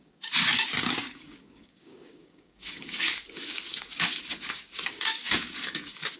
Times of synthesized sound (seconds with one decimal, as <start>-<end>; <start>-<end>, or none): 0.0-6.2